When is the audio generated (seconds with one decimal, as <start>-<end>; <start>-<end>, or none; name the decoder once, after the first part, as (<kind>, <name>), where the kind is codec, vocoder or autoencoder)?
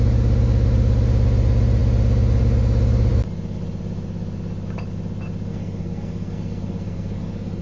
5.5-7.6 (codec, SNAC)